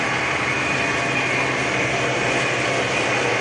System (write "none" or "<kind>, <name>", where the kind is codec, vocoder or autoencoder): none